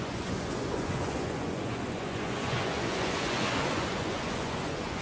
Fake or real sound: fake